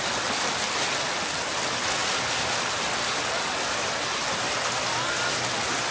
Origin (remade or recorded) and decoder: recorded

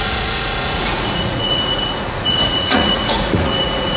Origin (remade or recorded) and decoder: remade, vocoder, Vocos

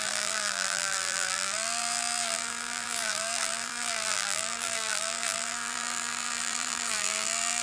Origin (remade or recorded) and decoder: remade, vocoder, BigVGAN v2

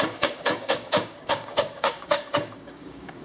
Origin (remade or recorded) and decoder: remade, codec, DAC